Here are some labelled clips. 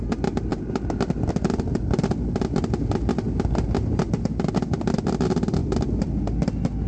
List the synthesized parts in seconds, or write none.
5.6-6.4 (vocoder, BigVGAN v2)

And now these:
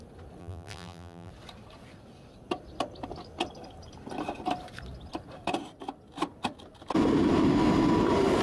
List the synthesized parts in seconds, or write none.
0.4-1.3 (vocoder, BigVGAN v2)

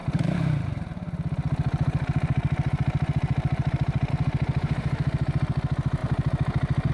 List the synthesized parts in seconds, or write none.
0.0-4.1 (vocoder, BigVGAN v2)

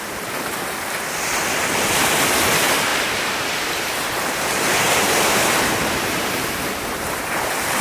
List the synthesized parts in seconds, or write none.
2.0-2.5 (vocoder, BigVGAN v2); 2.9-7.8

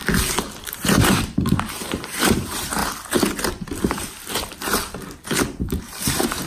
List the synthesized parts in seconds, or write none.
0.6-2.8 (vocoder, BigVGAN v2); 5.8-6.5

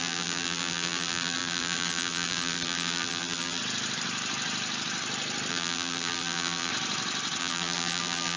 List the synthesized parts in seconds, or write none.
0.0-3.6 (vocoder, BigVGAN v2); 5.5-6.7; 7.4-8.4

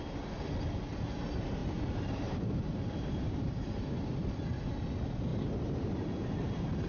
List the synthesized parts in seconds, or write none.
1.6-4.7 (vocoder, BigVGAN v2); 5.3-6.0

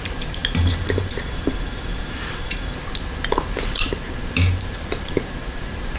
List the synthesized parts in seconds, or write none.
0.0-6.0 (vocoder, BigVGAN v2)